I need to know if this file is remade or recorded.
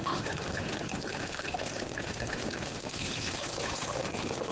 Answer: remade